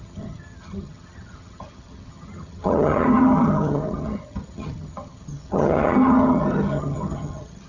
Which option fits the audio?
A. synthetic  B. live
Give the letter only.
A